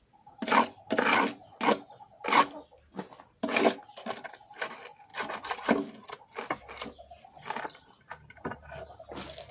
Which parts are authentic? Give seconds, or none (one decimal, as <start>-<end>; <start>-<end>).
0.0-9.5